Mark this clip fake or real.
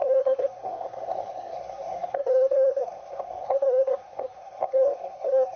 fake